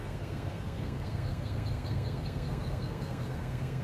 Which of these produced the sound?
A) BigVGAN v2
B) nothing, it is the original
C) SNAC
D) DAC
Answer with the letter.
C